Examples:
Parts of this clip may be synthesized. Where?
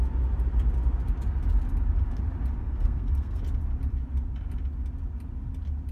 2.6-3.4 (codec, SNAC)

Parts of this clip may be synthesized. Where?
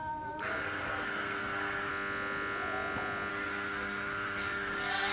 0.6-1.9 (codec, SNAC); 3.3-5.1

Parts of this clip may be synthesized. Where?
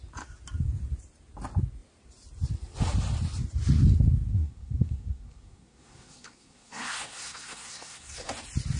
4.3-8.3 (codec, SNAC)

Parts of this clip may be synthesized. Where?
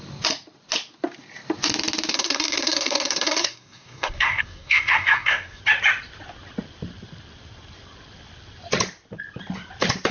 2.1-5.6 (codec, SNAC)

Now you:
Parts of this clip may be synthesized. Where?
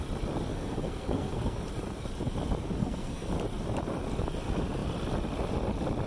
0.5-1.6 (codec, SNAC); 2.8-3.3